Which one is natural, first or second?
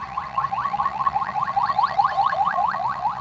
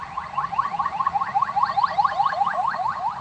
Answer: second